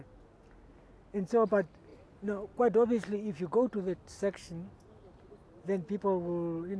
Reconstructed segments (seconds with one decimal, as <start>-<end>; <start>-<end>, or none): none